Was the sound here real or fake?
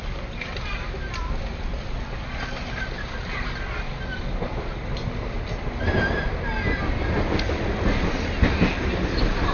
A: real